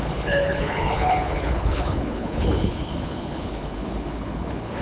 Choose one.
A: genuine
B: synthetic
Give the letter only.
B